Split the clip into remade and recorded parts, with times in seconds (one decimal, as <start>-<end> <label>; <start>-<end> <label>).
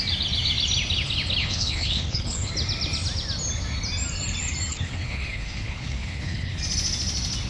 0.0-1.4 recorded; 1.4-2.5 remade; 2.5-4.7 recorded; 4.7-6.6 remade; 6.6-7.5 recorded